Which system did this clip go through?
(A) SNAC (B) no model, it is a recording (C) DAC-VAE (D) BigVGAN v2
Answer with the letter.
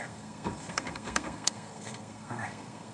A